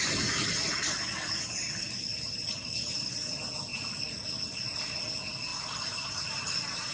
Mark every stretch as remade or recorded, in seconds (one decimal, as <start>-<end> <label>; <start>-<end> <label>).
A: 0.0-2.1 recorded; 2.1-3.2 remade; 3.2-5.5 recorded; 5.5-6.2 remade; 6.2-6.9 recorded